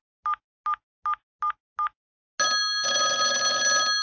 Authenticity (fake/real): real